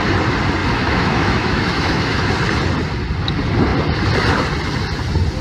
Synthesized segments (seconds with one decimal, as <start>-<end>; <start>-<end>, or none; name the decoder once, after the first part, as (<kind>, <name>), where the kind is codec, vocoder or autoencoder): 0.6-2.3 (autoencoder, DAC-VAE)